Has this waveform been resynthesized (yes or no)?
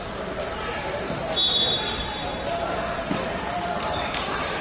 yes